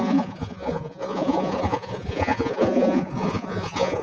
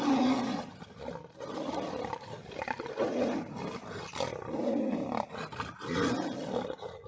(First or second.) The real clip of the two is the second